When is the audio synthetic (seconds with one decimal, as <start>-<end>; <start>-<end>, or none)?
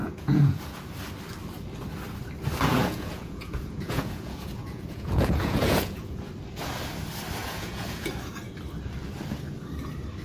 0.0-0.8; 2.7-6.3; 7.4-8.1